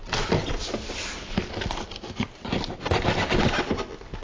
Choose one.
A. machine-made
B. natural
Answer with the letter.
B